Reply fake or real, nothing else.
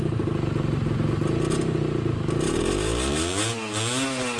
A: real